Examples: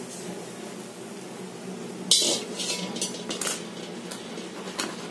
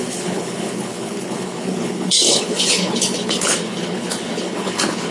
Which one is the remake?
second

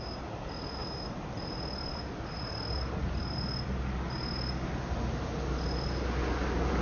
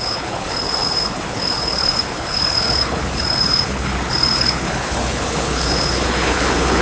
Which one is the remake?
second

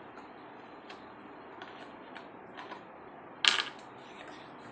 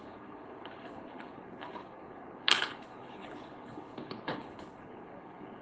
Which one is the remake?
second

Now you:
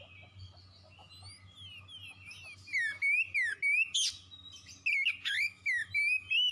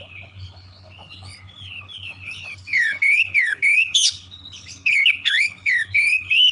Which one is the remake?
second